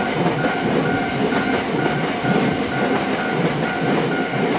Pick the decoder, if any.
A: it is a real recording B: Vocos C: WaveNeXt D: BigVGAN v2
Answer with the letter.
A